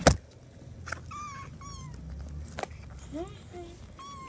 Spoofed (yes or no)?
no